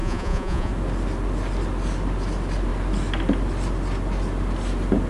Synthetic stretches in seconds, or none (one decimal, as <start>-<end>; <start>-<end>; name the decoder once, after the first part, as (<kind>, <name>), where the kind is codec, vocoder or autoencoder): 0.0-0.7 (vocoder, Vocos)